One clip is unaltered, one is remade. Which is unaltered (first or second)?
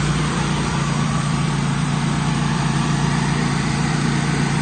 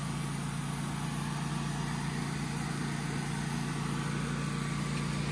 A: second